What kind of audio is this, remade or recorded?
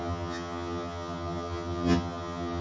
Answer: remade